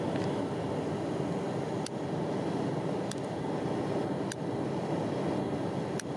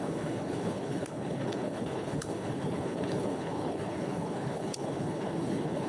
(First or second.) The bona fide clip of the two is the first